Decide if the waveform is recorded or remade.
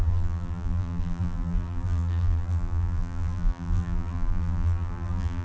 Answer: remade